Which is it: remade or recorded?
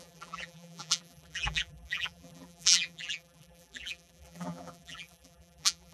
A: remade